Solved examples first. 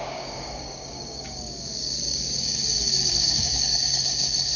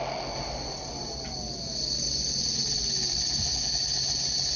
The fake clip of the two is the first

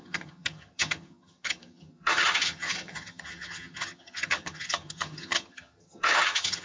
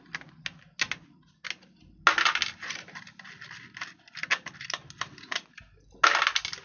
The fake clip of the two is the first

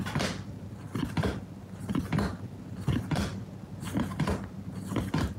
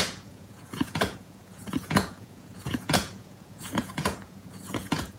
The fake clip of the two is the second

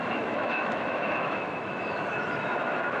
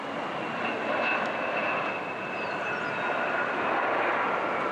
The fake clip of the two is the first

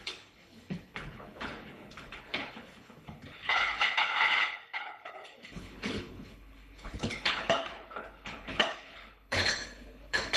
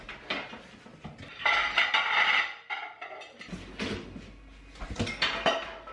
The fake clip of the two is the first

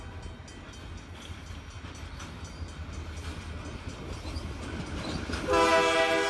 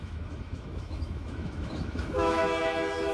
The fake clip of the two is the second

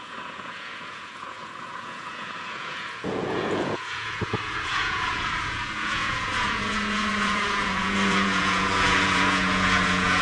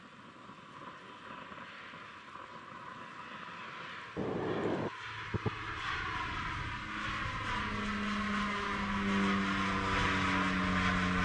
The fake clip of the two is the first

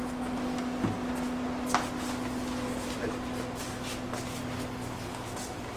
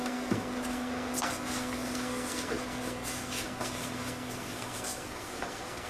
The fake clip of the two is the second